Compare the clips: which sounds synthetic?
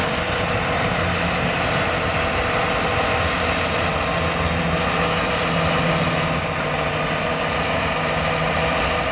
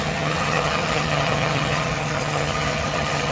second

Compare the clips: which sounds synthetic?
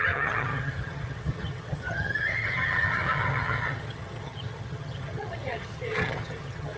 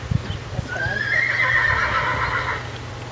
first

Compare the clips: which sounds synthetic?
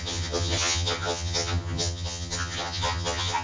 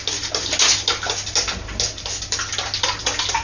first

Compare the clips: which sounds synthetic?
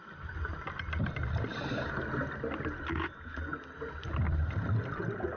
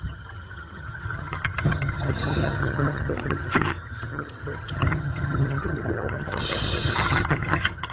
second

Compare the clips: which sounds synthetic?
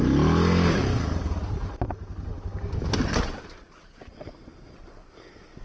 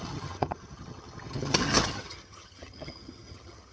second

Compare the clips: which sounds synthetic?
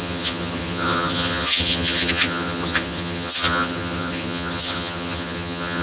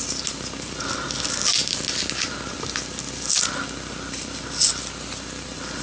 first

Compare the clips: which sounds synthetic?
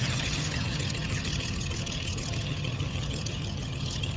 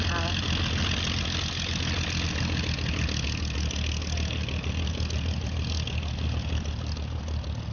first